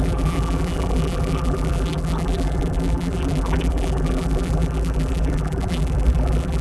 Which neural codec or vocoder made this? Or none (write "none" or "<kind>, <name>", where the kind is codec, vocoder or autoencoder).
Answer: vocoder, BigVGAN v2